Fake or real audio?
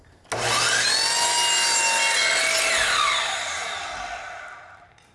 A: real